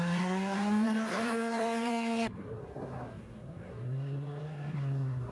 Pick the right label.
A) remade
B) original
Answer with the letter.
A